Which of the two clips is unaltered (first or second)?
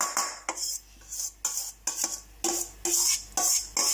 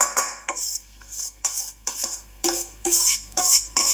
first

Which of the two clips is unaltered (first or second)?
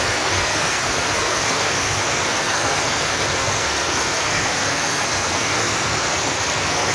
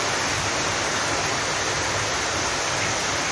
second